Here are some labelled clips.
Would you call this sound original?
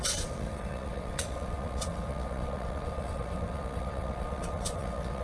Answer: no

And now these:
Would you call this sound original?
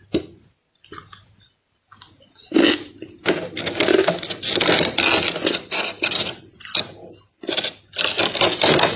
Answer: yes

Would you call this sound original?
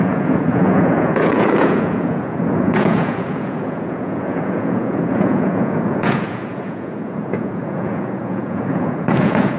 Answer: no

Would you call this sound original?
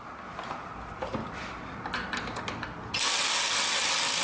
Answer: yes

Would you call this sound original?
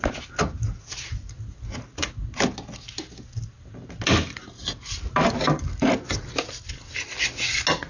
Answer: yes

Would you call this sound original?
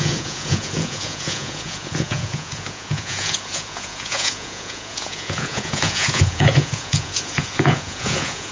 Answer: no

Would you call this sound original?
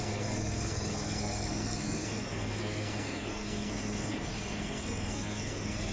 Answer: no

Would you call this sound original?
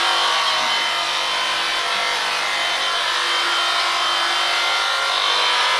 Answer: yes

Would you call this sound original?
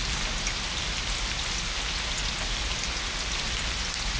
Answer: yes